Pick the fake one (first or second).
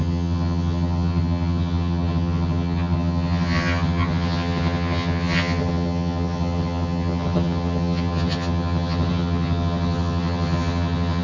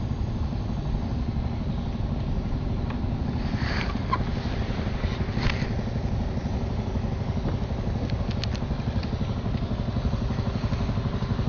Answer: first